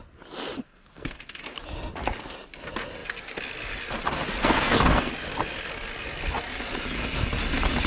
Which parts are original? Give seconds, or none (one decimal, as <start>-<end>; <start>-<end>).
0.0-0.6; 1.4-4.4; 5.1-7.9